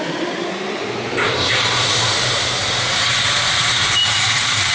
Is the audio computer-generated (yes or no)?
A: yes